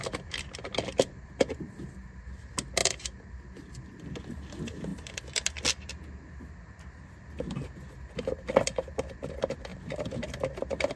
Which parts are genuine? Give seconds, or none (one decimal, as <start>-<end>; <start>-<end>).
0.0-11.0